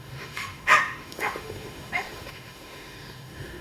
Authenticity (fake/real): fake